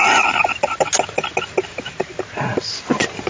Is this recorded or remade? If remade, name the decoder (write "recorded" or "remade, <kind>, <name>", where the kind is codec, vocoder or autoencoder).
recorded